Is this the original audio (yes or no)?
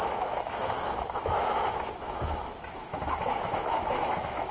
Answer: no